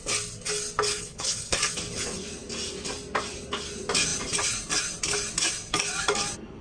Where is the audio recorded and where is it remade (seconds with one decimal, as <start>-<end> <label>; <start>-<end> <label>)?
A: 0.0-0.9 recorded; 0.9-1.6 remade; 1.6-6.6 recorded

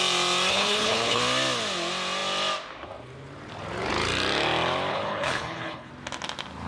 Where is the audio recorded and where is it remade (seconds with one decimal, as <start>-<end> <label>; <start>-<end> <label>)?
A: 0.0-0.5 recorded; 0.5-1.2 remade; 1.2-4.9 recorded; 4.9-5.9 remade; 5.9-6.7 recorded

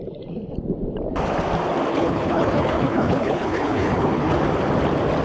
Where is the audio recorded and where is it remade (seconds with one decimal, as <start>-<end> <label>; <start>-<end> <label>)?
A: 0.0-1.9 recorded; 1.9-4.4 remade; 4.4-5.2 recorded

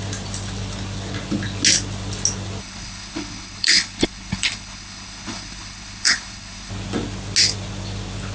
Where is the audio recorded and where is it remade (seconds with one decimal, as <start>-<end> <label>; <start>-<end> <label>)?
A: 0.0-2.6 recorded; 2.6-6.7 remade; 6.7-8.3 recorded

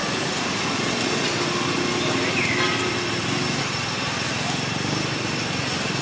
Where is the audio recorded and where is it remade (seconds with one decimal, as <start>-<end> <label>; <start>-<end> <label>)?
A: 0.0-6.0 recorded

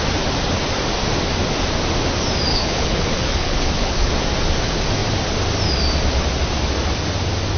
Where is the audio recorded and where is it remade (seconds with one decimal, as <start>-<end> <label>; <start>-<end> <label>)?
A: 0.0-2.5 recorded; 2.5-4.1 remade; 4.1-7.6 recorded